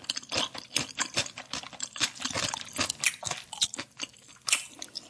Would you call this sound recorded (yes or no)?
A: yes